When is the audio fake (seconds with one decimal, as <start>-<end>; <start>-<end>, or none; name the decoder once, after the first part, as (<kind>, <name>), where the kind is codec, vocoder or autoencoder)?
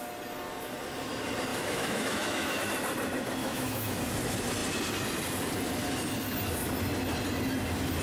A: 1.5-2.6 (autoencoder, DAC-VAE); 3.4-4.0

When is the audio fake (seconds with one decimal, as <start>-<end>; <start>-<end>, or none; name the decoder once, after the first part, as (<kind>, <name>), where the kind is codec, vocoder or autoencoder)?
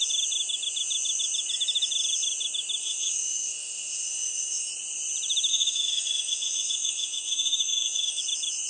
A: 2.8-4.7 (autoencoder, DAC-VAE); 5.5-8.2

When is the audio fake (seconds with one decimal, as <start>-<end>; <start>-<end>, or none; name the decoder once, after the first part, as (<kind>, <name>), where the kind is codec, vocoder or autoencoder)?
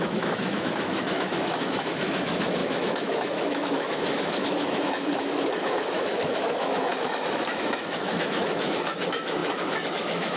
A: 0.0-10.4 (autoencoder, DAC-VAE)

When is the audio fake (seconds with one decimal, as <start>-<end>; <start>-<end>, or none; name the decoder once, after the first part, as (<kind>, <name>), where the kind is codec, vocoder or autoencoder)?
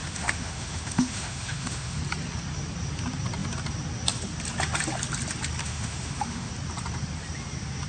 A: 0.0-2.0 (autoencoder, DAC-VAE); 5.6-6.5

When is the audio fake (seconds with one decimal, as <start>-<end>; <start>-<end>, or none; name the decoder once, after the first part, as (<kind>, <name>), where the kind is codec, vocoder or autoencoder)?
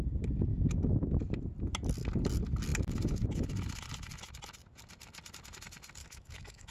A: 0.5-1.2 (autoencoder, DAC-VAE); 6.0-6.7